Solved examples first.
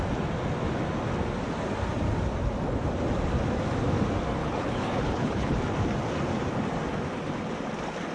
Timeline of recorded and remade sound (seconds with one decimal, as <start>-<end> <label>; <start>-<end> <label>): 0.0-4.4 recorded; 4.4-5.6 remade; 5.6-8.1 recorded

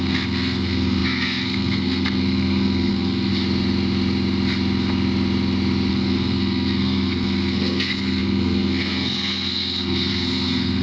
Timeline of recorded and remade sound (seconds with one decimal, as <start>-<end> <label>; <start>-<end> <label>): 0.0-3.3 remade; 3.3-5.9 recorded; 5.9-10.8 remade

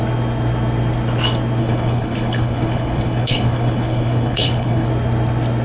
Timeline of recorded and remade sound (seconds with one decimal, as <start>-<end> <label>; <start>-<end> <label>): 0.0-1.6 recorded; 1.6-4.9 remade; 4.9-5.6 recorded

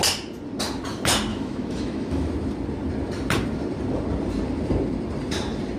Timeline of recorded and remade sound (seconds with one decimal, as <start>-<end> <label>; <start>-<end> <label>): 0.0-1.3 recorded; 1.3-2.3 remade; 2.3-5.8 recorded

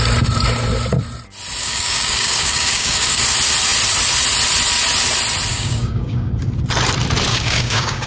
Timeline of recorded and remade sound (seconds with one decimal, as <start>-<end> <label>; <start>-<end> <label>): 0.0-1.6 recorded; 1.6-3.2 remade; 3.2-5.5 recorded; 5.5-6.3 remade; 6.3-7.3 recorded; 7.3-8.1 remade

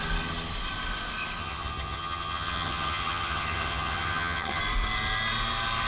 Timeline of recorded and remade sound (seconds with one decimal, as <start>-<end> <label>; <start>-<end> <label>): 0.0-1.4 recorded; 1.4-4.6 remade; 4.6-5.9 recorded